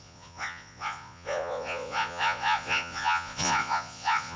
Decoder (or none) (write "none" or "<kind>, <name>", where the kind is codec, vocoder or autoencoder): vocoder, Vocos